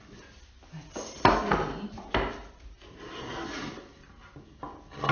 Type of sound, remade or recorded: recorded